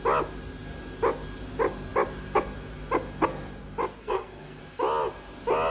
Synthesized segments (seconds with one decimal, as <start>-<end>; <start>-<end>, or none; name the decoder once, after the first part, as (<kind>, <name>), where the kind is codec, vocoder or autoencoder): 4.0-4.6 (codec, SNAC)